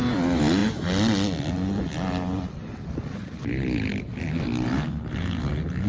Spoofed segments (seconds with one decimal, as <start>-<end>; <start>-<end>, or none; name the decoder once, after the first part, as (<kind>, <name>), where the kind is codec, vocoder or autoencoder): none